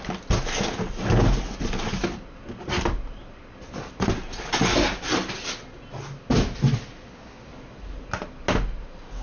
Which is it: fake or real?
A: real